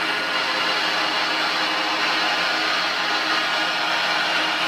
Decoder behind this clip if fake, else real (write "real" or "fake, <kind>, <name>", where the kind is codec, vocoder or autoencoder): real